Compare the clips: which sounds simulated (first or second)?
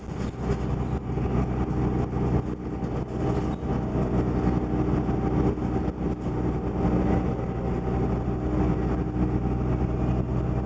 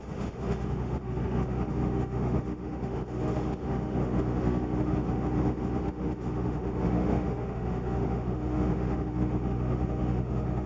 second